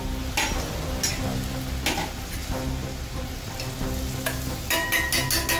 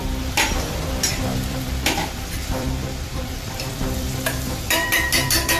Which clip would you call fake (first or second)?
second